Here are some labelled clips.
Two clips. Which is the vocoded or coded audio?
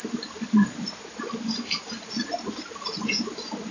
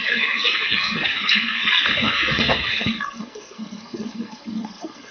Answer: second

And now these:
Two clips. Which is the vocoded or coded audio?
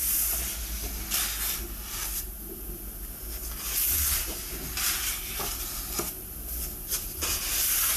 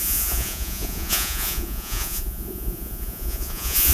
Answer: second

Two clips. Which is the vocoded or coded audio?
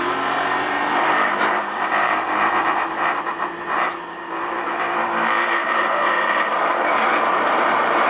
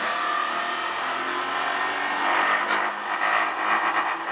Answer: first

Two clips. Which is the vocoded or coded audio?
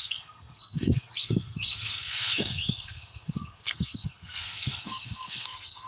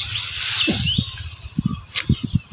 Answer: first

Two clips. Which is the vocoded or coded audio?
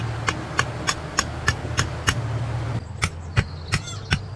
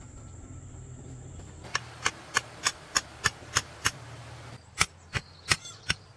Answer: second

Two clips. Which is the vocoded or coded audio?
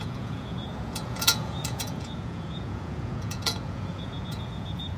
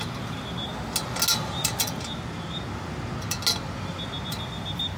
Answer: first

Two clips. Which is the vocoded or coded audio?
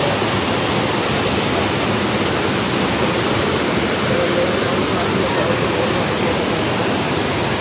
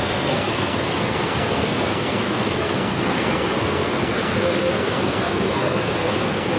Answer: second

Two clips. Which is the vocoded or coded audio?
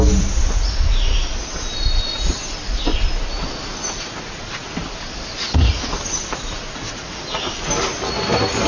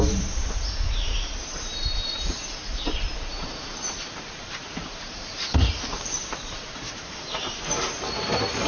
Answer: second